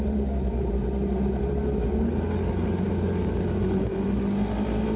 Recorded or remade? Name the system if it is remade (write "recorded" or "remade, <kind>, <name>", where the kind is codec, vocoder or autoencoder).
recorded